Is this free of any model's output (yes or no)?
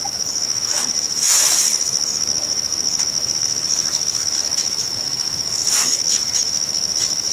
no